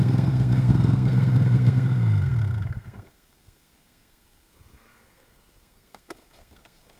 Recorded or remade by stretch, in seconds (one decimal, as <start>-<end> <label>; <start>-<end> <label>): 0.0-7.0 remade